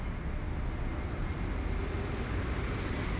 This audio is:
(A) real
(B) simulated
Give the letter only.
A